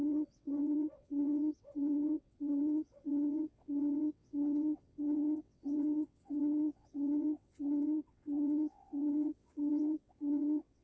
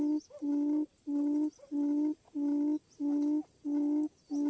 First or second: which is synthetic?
first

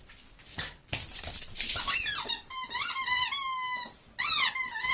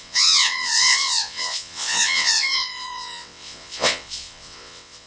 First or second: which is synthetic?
second